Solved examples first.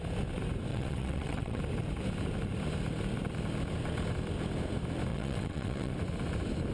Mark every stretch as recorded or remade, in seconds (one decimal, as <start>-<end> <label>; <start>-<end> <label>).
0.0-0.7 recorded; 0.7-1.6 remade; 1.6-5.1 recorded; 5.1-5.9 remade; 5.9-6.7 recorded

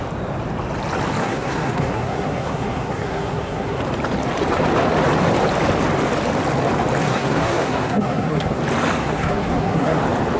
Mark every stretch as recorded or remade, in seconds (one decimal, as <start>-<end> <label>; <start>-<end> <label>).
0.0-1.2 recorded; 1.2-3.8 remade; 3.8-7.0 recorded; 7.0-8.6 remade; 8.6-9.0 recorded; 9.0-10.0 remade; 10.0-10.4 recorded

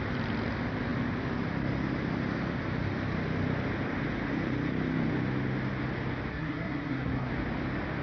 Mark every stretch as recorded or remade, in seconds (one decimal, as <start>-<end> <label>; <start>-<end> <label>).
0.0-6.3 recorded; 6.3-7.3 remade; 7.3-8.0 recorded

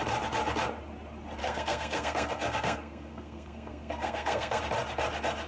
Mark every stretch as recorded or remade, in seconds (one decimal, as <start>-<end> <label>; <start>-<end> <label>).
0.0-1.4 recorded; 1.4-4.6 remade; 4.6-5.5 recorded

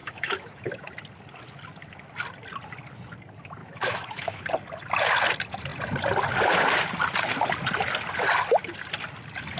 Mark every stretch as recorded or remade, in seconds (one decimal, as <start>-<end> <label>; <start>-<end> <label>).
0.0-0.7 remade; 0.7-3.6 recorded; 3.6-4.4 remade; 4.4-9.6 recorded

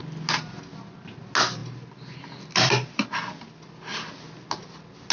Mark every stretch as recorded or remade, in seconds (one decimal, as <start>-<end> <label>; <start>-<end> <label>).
0.0-5.1 recorded

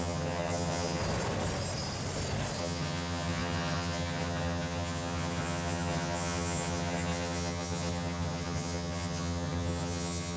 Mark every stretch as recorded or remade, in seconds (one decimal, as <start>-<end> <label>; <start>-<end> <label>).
0.0-1.0 remade; 1.0-2.6 recorded; 2.6-10.4 remade